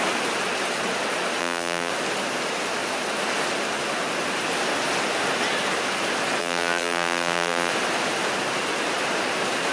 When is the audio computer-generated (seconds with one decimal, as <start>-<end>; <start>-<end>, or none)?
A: 1.4-1.9; 6.4-7.7